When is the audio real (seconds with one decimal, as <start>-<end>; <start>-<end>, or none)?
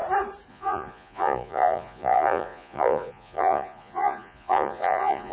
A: 0.0-0.5